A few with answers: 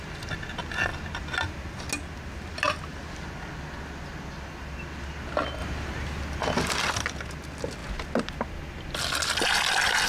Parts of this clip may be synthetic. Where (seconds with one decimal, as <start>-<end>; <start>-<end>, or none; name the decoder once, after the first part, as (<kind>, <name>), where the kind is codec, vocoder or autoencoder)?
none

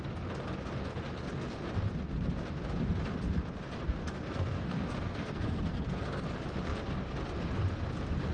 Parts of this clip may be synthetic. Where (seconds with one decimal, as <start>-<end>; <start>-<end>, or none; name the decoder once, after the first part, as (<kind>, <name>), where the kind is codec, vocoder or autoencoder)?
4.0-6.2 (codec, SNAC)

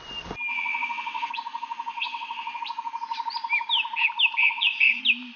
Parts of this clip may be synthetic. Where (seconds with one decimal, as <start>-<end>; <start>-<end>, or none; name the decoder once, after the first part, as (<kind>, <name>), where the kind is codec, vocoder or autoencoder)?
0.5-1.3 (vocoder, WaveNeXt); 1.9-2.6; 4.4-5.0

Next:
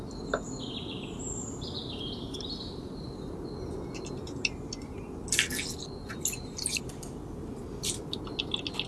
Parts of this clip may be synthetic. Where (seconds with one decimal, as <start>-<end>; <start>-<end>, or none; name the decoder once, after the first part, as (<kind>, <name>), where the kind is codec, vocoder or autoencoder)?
1.4-3.3 (vocoder, BigVGAN v2); 6.7-8.4

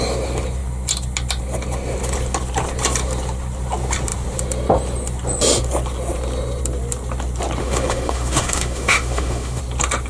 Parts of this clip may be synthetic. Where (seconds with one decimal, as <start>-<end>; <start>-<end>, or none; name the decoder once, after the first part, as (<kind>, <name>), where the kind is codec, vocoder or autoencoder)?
7.6-9.6 (autoencoder, DAC-VAE)